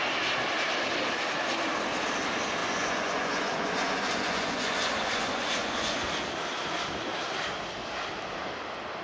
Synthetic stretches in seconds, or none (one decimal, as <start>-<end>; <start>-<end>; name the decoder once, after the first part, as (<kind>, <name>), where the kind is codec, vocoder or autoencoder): 2.6-6.1 (vocoder, Vocos)